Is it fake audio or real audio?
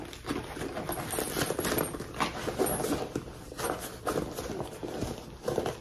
real